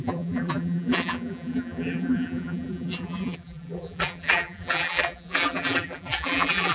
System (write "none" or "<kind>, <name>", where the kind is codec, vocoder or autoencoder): vocoder, BigVGAN v2